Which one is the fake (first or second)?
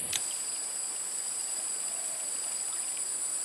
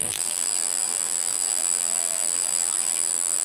second